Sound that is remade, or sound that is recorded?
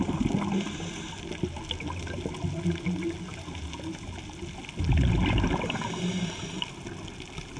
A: recorded